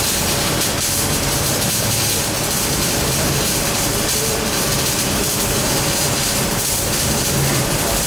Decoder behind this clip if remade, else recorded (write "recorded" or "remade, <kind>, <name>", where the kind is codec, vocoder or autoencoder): remade, vocoder, BigVGAN v2